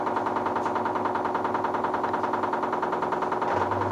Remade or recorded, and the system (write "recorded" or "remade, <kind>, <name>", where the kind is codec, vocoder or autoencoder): recorded